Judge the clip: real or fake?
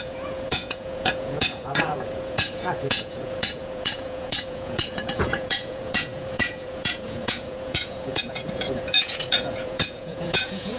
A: fake